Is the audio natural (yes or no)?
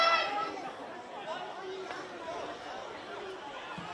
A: yes